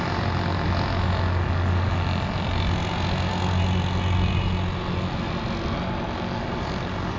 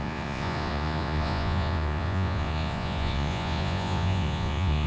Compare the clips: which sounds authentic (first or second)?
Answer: first